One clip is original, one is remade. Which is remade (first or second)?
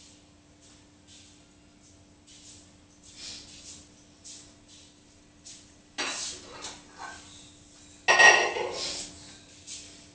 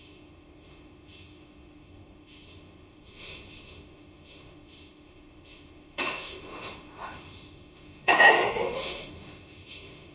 second